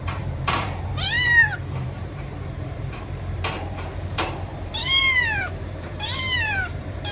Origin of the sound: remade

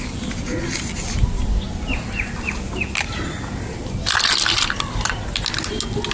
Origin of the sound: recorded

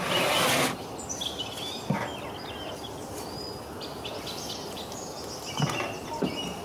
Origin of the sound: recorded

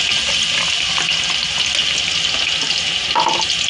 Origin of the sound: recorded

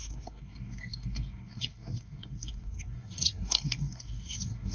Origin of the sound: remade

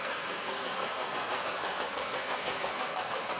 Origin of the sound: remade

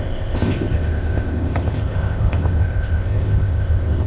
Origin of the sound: remade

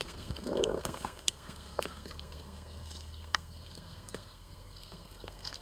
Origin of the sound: remade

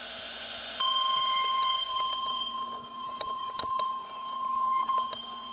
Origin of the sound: remade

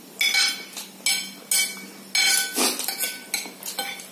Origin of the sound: recorded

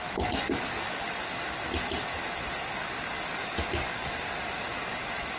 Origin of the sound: recorded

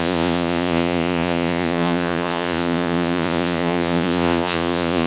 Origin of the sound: remade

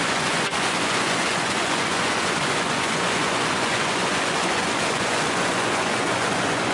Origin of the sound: remade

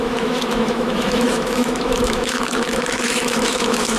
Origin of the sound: remade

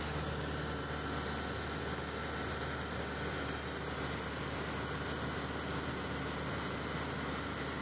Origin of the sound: recorded